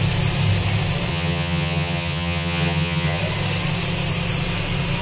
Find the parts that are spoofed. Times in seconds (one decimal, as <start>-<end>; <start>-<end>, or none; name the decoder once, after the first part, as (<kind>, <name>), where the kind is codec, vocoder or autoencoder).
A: 1.1-3.2 (vocoder, HiFi-GAN)